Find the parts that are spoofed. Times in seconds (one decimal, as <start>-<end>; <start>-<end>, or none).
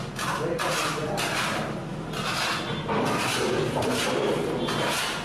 none